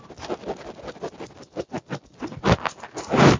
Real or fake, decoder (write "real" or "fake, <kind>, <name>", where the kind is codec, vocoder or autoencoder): real